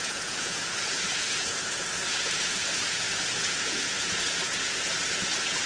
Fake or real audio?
fake